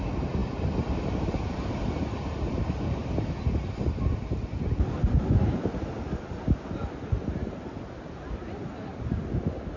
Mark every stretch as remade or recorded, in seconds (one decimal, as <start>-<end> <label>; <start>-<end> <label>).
0.0-7.4 recorded; 7.4-8.0 remade; 8.0-9.8 recorded